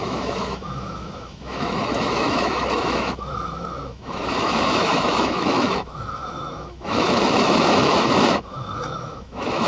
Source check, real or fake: fake